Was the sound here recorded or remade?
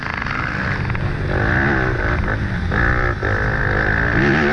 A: recorded